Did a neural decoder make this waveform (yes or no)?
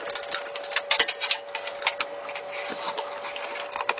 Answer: no